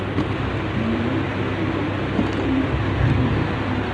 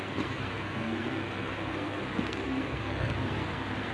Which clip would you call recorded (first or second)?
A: first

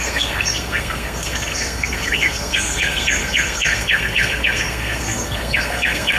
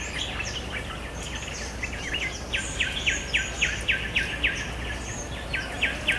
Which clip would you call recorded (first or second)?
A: second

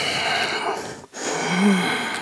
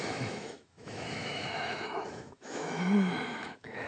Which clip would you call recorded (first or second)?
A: first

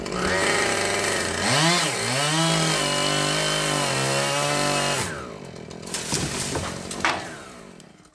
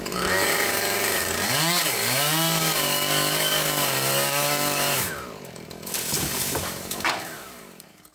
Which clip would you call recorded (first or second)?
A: first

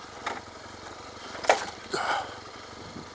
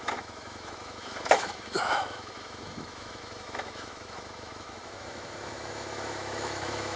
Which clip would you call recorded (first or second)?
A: first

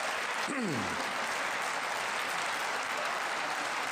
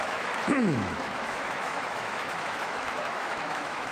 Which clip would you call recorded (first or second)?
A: first